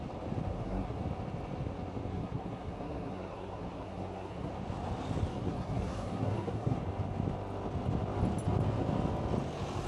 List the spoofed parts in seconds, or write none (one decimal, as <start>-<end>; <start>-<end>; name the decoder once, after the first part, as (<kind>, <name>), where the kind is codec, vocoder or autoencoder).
0.5-1.0 (codec, SNAC); 2.1-4.5; 5.3-6.8